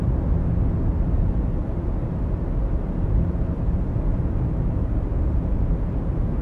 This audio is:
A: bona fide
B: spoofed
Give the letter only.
A